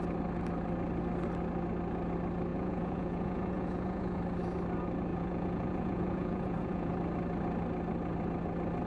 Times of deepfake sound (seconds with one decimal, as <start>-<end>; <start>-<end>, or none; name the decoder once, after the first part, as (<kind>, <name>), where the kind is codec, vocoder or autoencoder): 2.5-4.2 (vocoder, Vocos); 5.1-6.9